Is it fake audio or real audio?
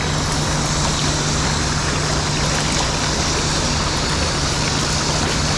real